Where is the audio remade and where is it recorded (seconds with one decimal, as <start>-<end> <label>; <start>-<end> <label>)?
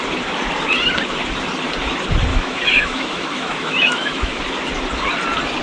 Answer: 0.0-2.3 recorded; 2.3-4.4 remade; 4.4-5.6 recorded